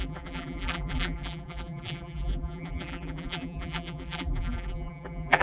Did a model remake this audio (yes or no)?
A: yes